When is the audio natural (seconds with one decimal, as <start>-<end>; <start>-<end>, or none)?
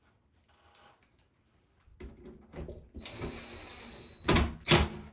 0.0-5.1